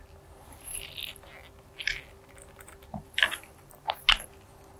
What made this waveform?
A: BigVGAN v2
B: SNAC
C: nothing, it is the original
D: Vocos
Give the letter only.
C